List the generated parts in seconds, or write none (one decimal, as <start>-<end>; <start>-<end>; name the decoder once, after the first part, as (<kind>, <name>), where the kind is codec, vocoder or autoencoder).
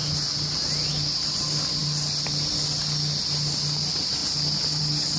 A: none